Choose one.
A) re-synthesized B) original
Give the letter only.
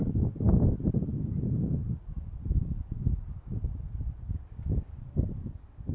B